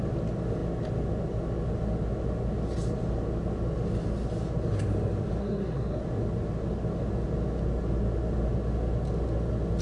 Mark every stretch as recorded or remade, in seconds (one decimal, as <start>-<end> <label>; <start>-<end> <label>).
0.0-5.4 recorded; 5.4-6.0 remade; 6.0-9.8 recorded